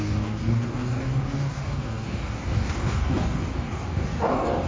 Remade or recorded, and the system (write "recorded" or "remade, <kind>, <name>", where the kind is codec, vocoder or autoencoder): remade, codec, DAC